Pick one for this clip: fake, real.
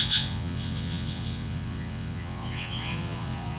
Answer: fake